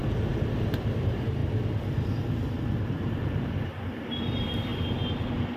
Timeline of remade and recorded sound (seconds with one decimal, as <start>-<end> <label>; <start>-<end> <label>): 0.0-0.6 recorded; 0.6-1.4 remade; 1.4-2.6 recorded; 2.6-4.7 remade; 4.7-5.6 recorded